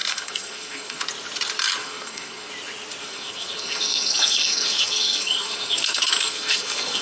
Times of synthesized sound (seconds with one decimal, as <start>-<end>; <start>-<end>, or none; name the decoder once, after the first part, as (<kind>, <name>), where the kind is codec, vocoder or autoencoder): 0.0-1.0 (codec, SNAC); 1.8-2.5; 3.0-7.0